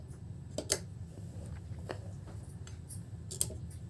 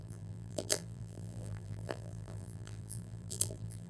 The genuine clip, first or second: first